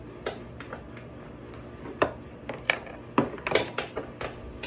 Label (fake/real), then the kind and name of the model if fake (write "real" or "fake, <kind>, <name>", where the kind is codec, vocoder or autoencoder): real